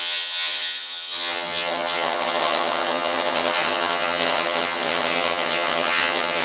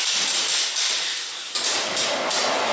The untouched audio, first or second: second